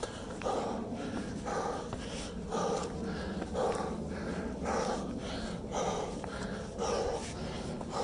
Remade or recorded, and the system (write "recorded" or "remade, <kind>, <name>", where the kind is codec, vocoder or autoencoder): remade, vocoder, BigVGAN v2